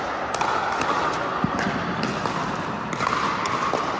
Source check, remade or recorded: recorded